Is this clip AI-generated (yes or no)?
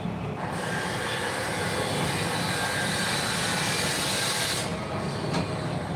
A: no